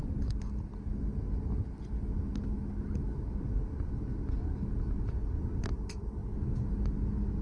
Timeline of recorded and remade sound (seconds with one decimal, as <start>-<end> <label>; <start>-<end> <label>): 0.0-0.7 remade; 0.7-5.1 recorded; 5.1-6.2 remade; 6.2-7.4 recorded